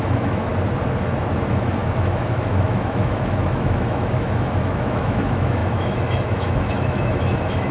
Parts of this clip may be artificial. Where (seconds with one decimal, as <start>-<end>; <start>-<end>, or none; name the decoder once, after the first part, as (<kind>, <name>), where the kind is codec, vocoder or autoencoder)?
0.0-0.5 (autoencoder, DAC-VAE); 1.3-7.7